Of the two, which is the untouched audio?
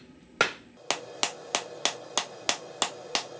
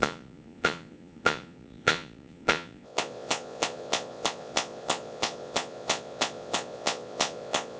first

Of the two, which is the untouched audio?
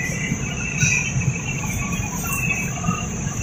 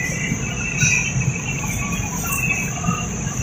second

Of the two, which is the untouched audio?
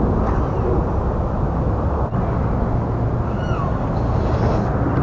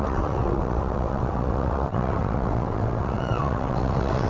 first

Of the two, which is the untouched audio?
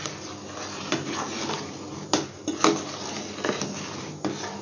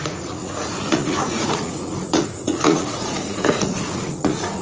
first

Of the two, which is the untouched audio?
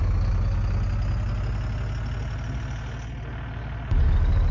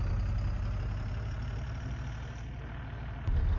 first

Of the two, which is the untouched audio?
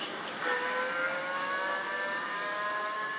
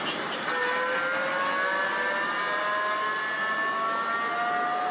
second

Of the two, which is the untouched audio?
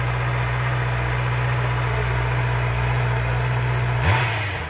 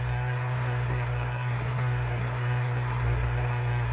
first